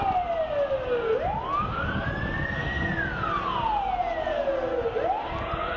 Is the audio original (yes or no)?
yes